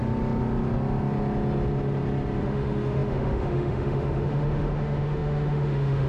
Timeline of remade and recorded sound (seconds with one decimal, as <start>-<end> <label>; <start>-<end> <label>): 0.0-2.4 recorded; 2.4-6.1 remade